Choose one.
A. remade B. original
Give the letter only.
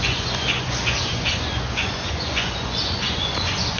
A